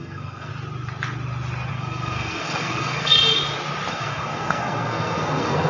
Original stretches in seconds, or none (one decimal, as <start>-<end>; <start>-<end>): 0.5-1.7; 3.2-3.9